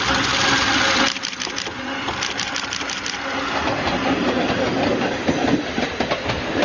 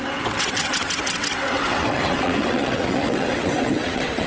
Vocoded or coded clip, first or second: second